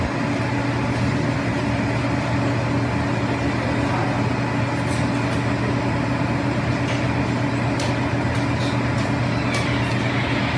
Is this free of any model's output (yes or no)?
yes